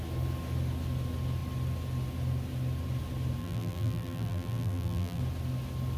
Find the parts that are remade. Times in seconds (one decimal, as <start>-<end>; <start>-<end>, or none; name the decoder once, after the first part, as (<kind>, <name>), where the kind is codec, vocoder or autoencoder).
3.4-5.2 (vocoder, BigVGAN v2)